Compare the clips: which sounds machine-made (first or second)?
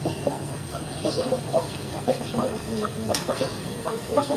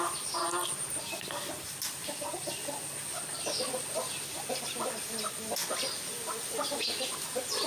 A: first